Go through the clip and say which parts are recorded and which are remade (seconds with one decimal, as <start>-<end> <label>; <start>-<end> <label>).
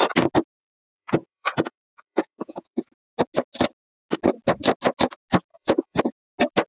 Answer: 0.0-0.6 recorded; 0.6-2.9 remade; 2.9-5.5 recorded; 5.5-6.0 remade; 6.0-6.7 recorded